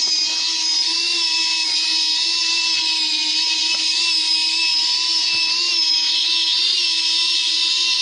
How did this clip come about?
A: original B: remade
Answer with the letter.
A